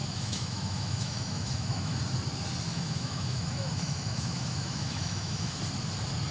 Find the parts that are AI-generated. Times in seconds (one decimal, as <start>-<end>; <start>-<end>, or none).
0.0-2.0; 2.7-5.6